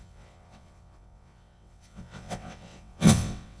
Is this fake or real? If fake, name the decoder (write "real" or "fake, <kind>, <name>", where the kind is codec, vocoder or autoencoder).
fake, vocoder, WaveNeXt